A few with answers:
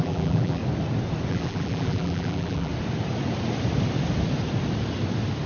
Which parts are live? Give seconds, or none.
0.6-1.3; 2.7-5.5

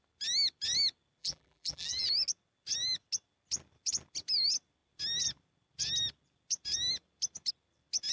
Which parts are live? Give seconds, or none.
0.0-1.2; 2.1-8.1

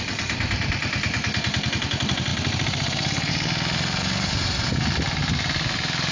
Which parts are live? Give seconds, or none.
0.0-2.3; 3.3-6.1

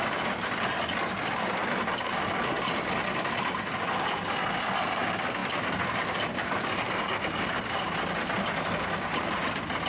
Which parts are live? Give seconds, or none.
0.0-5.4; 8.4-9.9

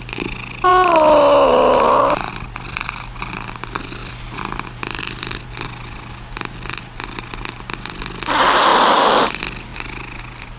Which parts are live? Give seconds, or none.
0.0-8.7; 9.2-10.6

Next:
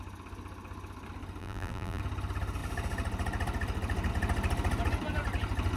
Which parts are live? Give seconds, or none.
0.0-1.4; 2.0-5.8

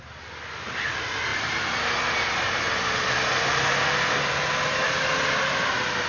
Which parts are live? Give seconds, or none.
0.0-6.1